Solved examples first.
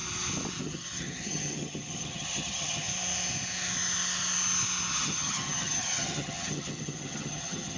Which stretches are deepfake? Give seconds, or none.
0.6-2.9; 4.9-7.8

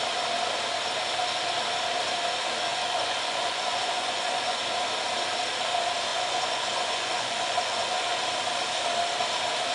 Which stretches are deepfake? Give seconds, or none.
2.7-4.6; 6.1-8.2

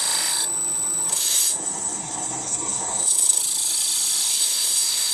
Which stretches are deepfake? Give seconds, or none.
1.1-3.4; 4.3-5.1

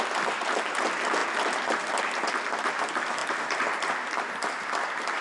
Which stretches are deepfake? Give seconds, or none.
none

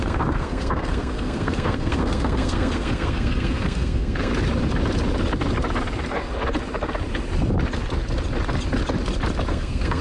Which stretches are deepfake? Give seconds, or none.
0.0-4.3; 9.5-10.0

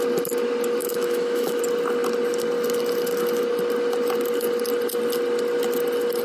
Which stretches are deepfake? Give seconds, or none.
0.8-1.6

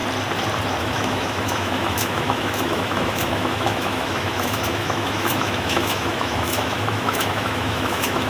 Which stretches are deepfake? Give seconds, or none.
0.8-8.3

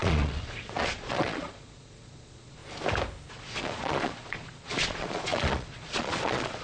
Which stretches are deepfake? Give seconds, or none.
0.0-2.6; 3.3-6.6